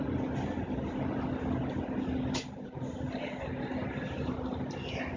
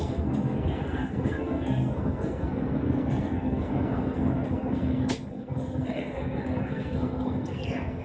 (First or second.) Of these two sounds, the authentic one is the first